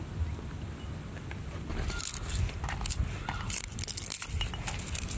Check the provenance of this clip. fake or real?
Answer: real